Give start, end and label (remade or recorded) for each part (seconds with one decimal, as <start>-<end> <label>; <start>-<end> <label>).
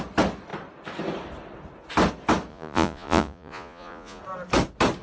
0.0-2.5 recorded; 2.5-4.2 remade; 4.2-5.0 recorded